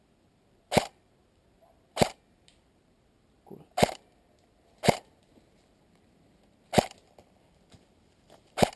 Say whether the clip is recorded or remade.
recorded